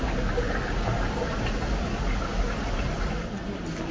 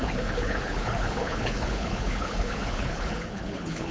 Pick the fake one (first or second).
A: second